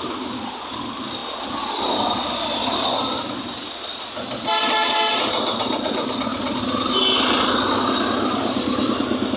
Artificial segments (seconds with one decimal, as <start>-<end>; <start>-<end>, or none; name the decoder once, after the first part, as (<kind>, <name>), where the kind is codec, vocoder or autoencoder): none